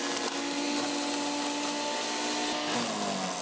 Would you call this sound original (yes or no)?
yes